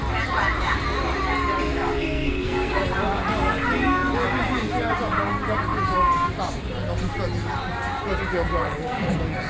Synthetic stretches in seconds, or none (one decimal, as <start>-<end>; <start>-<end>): 1.9-2.8; 8.6-9.5